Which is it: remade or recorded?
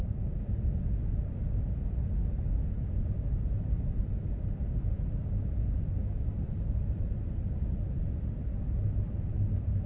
recorded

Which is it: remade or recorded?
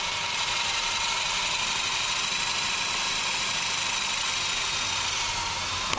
recorded